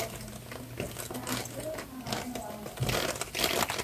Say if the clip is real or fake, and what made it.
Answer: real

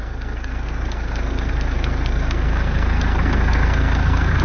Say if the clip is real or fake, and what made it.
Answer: fake, codec, SNAC